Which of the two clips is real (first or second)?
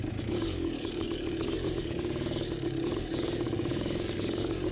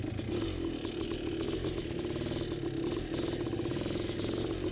second